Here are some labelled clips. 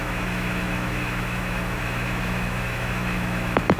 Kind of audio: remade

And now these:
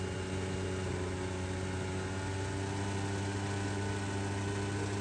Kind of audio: recorded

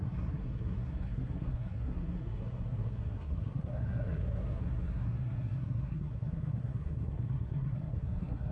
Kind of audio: remade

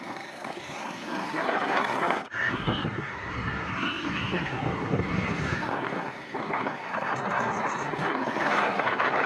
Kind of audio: remade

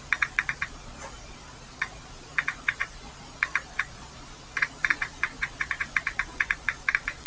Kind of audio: remade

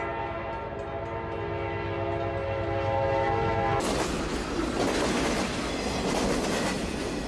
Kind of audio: recorded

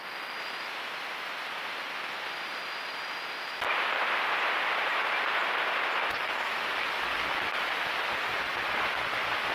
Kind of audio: recorded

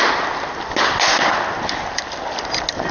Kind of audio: recorded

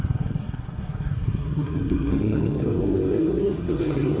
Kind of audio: remade